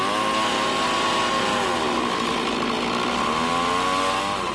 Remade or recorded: recorded